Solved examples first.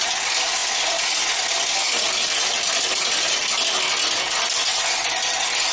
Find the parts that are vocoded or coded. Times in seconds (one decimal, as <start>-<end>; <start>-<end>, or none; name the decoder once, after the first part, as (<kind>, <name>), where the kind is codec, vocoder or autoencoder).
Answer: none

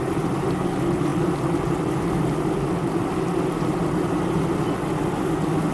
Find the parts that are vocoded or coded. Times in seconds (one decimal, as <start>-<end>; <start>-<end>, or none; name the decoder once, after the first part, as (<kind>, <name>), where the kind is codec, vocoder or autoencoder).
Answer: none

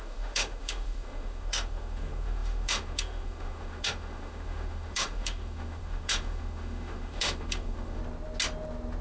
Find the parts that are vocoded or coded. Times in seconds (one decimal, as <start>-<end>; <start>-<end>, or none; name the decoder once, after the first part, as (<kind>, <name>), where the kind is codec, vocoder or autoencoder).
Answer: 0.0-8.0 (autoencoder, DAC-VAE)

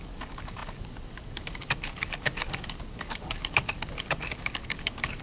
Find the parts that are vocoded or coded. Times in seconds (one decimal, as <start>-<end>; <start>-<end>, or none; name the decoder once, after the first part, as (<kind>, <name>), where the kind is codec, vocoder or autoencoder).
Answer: 0.0-5.2 (codec, DAC)